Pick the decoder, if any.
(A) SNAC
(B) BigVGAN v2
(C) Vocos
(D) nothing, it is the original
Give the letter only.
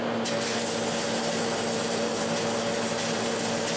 D